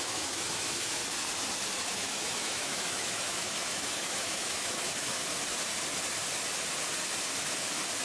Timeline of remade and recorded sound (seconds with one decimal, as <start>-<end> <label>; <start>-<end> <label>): 0.0-1.0 remade; 1.0-1.9 recorded; 1.9-5.2 remade; 5.2-8.0 recorded